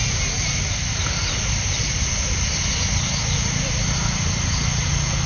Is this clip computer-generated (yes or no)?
no